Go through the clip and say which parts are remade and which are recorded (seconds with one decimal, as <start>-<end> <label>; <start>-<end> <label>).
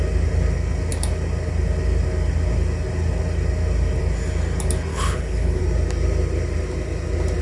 0.0-4.9 recorded; 4.9-5.6 remade; 5.6-7.4 recorded